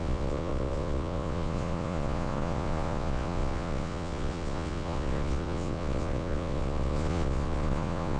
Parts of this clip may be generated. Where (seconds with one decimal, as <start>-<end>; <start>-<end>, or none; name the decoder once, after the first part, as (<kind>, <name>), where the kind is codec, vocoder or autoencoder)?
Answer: 0.0-8.2 (vocoder, Vocos)